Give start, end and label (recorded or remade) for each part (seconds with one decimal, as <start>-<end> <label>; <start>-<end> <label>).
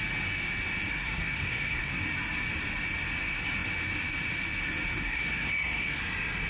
0.0-0.9 recorded; 0.9-2.0 remade; 2.0-5.0 recorded; 5.0-6.0 remade; 6.0-6.5 recorded